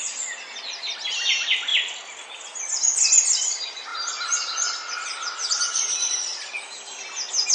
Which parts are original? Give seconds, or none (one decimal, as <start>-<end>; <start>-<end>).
0.0-7.5